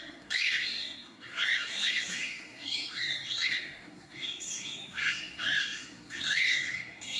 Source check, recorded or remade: remade